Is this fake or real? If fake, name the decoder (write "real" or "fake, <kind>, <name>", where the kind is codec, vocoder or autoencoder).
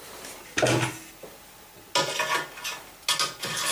real